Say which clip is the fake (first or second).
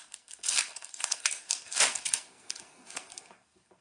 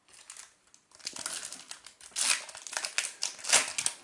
first